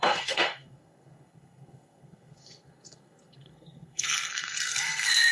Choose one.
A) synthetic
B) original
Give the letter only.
A